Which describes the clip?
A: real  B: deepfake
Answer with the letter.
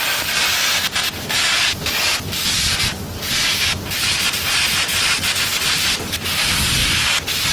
A